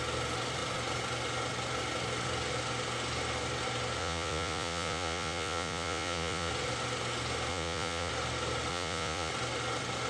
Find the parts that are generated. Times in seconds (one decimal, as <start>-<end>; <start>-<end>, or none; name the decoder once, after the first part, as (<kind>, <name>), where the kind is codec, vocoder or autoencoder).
4.0-6.5 (vocoder, Vocos); 7.5-8.1; 8.7-9.3